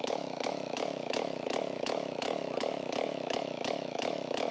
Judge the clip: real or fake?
fake